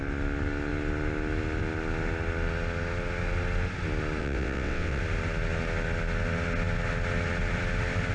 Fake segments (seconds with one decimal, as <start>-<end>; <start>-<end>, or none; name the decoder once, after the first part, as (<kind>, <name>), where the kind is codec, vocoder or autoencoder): 4.2-5.0 (vocoder, WaveNeXt)